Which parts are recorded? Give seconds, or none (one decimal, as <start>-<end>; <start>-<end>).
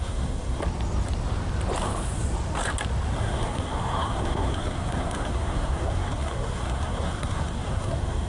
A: 0.6-3.2